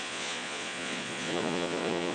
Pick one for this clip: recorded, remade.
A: remade